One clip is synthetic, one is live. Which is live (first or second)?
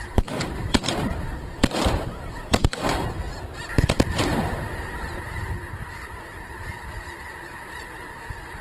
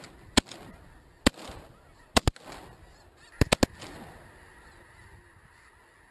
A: second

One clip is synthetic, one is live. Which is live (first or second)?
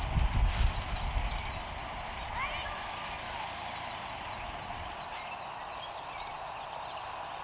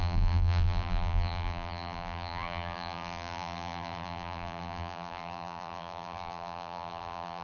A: first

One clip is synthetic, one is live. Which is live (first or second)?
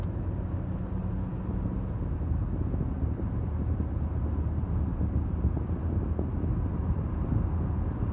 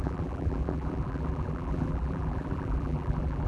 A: first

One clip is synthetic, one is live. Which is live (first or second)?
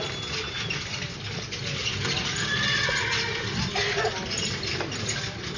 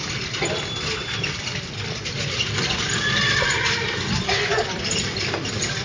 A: first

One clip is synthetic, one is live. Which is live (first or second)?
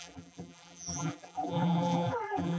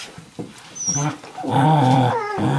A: second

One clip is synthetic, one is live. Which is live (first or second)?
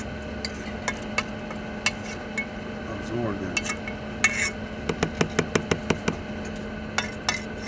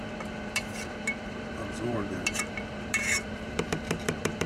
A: first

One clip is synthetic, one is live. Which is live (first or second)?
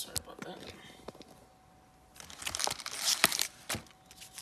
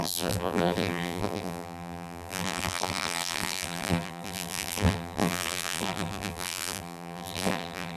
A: first